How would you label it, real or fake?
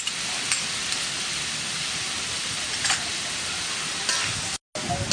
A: real